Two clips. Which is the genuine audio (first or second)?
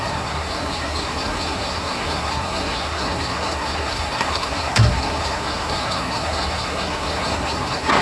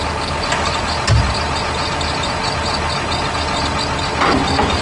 second